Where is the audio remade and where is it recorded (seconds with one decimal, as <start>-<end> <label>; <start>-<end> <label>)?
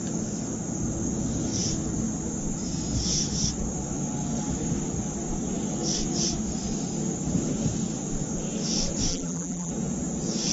0.0-9.1 recorded; 9.1-9.7 remade; 9.7-10.5 recorded